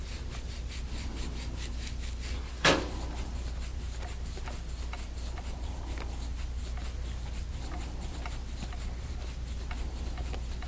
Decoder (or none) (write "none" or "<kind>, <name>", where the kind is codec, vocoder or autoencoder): none